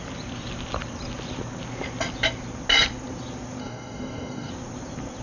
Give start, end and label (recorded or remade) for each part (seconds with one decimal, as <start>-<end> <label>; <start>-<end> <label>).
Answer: 0.0-3.6 recorded; 3.6-4.5 remade; 4.5-5.2 recorded